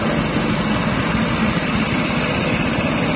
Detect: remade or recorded recorded